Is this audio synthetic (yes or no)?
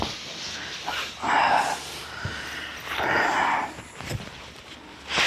no